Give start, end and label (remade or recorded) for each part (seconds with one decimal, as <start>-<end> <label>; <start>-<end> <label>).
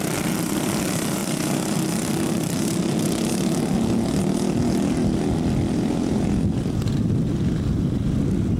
0.0-8.6 recorded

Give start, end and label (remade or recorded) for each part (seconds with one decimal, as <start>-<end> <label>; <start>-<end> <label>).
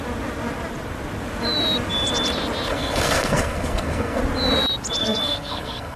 0.0-2.7 recorded; 2.7-4.2 remade; 4.2-5.0 recorded; 5.0-6.0 remade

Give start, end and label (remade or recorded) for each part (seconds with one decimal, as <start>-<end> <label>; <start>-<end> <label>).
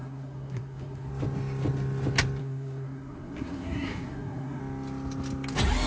0.0-1.1 remade; 1.1-2.4 recorded; 2.4-4.6 remade; 4.6-5.9 recorded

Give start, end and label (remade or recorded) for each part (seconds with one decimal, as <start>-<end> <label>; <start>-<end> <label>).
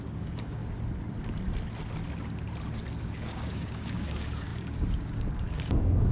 0.0-0.6 remade; 0.6-3.0 recorded; 3.0-6.1 remade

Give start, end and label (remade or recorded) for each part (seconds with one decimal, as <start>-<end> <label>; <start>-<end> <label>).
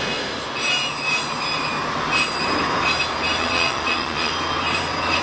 0.0-3.4 recorded; 3.4-4.3 remade; 4.3-5.2 recorded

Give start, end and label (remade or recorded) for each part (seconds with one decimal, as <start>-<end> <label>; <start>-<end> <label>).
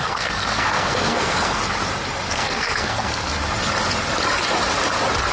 0.0-1.6 remade; 1.6-2.3 recorded; 2.3-3.3 remade; 3.3-5.3 recorded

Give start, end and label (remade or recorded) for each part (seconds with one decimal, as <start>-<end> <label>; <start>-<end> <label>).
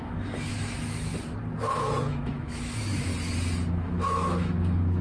0.0-1.1 remade; 1.1-2.1 recorded; 2.1-3.1 remade; 3.1-3.7 recorded; 3.7-5.0 remade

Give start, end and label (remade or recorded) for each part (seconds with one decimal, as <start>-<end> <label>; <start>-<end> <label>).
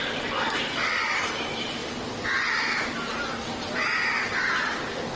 0.0-5.2 recorded